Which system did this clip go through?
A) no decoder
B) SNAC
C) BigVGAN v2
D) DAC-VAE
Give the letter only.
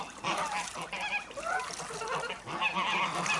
C